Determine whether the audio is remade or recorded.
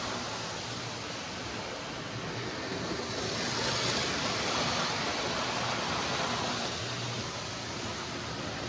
recorded